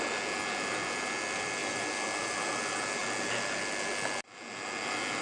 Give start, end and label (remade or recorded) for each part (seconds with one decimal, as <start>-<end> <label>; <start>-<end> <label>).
0.0-5.2 recorded